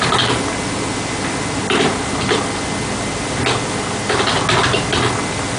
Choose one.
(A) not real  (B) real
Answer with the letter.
B